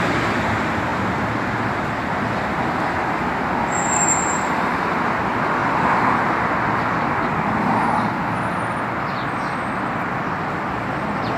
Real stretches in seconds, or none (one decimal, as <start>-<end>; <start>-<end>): 0.0-11.4